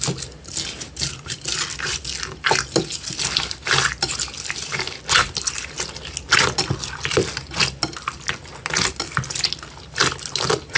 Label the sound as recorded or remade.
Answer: recorded